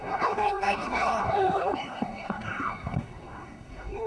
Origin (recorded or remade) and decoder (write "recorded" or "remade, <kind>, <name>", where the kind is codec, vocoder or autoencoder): remade, codec, SNAC